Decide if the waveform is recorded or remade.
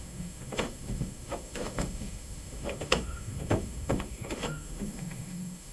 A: remade